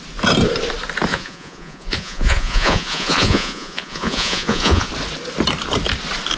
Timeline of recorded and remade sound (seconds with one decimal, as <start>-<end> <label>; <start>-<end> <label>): 0.0-1.1 recorded; 1.1-4.9 remade; 4.9-6.4 recorded